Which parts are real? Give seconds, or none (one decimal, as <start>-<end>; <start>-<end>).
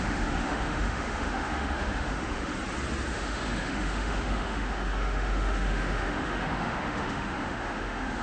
2.5-3.1